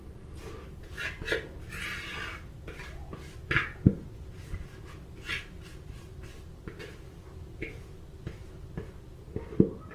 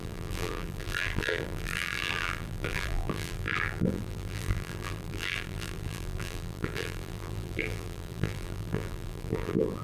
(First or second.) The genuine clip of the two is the first